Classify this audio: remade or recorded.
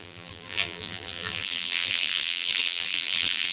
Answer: remade